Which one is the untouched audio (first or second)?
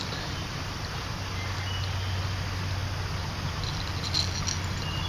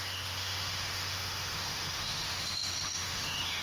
first